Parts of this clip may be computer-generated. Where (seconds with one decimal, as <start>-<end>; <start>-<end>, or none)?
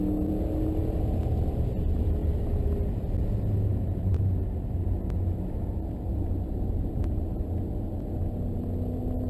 3.7-4.9; 6.1-7.6